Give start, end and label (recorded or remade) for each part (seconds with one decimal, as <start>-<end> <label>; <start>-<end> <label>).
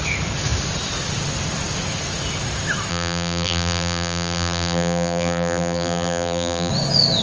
0.0-2.9 recorded; 2.9-6.7 remade; 6.7-7.2 recorded